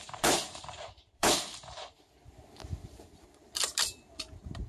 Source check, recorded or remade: remade